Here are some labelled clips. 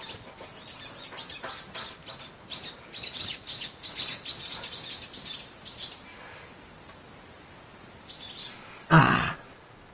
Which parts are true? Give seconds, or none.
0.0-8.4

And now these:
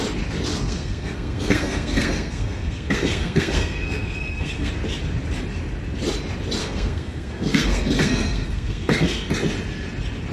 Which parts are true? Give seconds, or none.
0.0-0.5; 4.7-6.6; 9.3-10.3

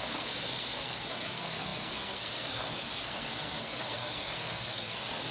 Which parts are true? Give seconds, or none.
none

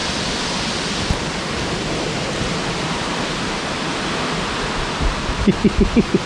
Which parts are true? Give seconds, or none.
0.0-6.3

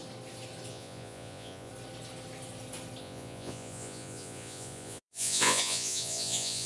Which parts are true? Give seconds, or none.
0.0-0.7; 1.7-3.0